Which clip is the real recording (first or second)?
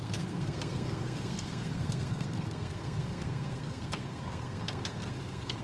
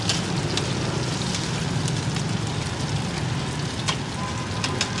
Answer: second